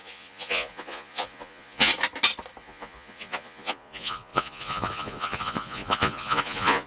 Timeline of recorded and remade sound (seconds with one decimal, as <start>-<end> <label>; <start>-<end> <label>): 0.0-1.9 remade; 1.9-2.6 recorded; 2.6-6.9 remade